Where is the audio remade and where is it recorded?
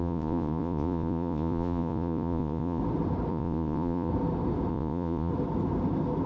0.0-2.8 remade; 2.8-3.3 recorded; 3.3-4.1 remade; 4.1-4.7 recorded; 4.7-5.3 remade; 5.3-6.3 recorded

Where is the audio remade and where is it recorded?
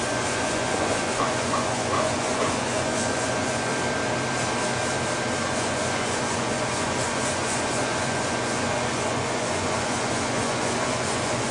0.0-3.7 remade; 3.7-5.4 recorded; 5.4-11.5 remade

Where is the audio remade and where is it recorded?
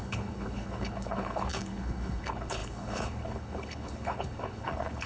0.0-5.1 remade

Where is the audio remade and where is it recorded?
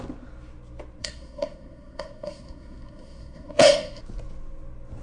0.0-1.0 recorded; 1.0-4.0 remade; 4.0-5.0 recorded